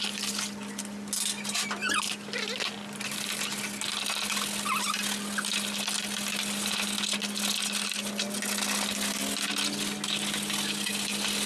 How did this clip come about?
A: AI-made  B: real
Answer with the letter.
B